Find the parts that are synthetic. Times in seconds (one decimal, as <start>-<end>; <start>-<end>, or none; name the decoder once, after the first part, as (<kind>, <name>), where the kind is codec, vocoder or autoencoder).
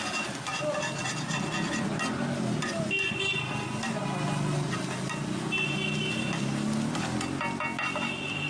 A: none